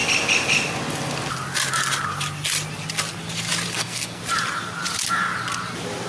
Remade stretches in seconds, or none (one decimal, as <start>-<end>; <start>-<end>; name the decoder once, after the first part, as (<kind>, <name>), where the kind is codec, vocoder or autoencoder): 3.7-4.2 (codec, SNAC)